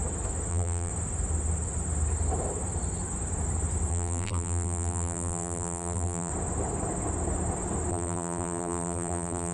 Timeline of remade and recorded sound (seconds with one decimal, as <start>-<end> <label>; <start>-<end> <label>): 0.0-0.5 recorded; 0.5-0.9 remade; 0.9-3.9 recorded; 3.9-6.3 remade; 6.3-7.9 recorded; 7.9-9.5 remade